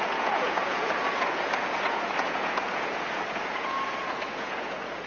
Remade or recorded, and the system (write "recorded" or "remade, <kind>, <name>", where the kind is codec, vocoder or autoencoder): remade, vocoder, Vocos